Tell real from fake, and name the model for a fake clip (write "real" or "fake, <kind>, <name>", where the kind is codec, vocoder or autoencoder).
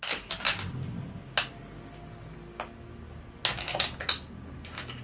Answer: real